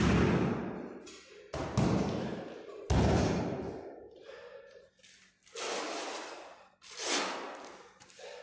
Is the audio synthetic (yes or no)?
no